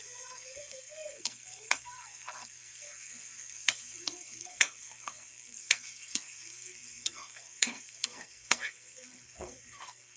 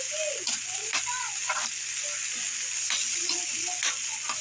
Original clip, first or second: second